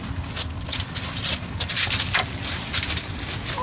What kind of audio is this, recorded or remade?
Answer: recorded